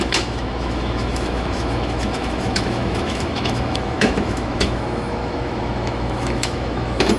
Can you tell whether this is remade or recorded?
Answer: remade